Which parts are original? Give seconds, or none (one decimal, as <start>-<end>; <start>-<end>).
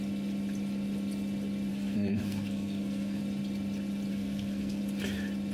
0.0-1.7; 3.2-4.1; 4.8-5.5